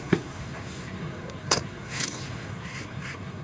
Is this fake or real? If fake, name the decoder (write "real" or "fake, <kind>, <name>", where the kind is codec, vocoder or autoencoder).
fake, codec, SNAC